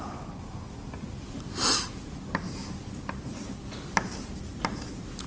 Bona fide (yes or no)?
yes